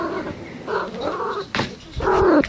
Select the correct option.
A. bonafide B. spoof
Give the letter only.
A